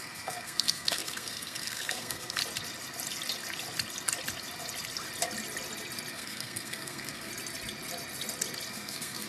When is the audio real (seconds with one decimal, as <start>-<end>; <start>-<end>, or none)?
2.4-6.1; 7.3-8.7